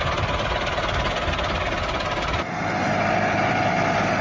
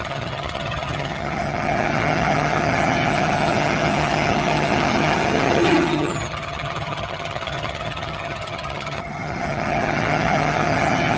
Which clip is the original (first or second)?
first